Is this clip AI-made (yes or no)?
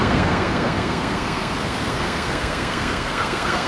yes